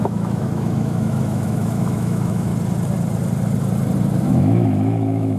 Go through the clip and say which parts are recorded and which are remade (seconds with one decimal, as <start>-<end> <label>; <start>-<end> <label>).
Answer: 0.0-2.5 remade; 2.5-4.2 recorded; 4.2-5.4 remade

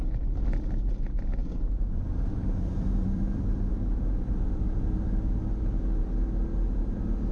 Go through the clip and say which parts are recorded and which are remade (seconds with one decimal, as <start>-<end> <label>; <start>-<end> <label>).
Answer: 0.0-1.4 recorded; 1.4-5.8 remade; 5.8-7.3 recorded

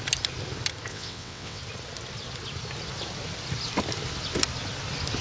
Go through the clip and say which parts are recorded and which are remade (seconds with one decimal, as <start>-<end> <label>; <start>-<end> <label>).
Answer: 0.0-0.9 recorded; 0.9-1.6 remade; 1.6-5.2 recorded